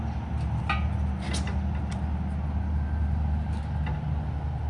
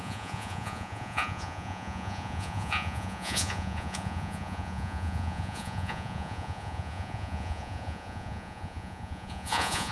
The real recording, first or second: first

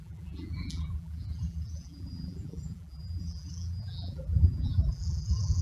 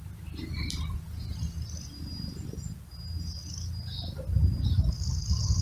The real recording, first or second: second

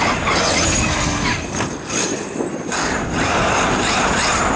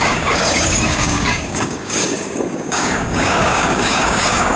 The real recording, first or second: first